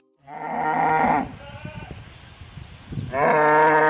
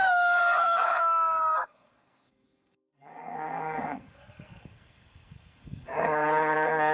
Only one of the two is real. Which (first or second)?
first